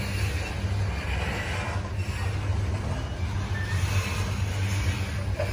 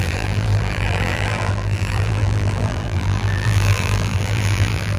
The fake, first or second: second